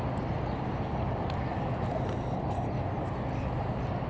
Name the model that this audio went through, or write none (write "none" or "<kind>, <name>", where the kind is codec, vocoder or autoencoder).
none